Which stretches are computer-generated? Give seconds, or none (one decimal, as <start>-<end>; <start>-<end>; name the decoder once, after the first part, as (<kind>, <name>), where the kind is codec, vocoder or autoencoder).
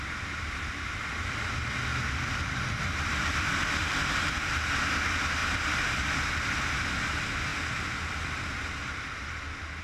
1.9-4.3 (vocoder, BigVGAN v2); 5.4-6.3